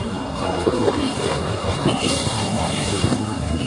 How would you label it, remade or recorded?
remade